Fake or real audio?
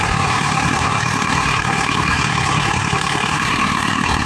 fake